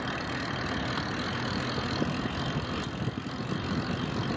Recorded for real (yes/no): yes